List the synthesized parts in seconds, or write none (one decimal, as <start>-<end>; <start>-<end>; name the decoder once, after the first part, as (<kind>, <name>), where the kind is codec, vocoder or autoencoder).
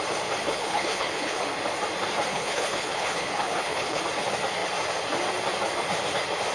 0.4-1.4 (codec, HILCodec); 2.3-4.0